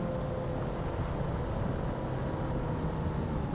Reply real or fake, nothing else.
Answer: real